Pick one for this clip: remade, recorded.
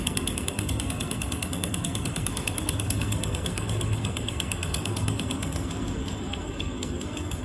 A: remade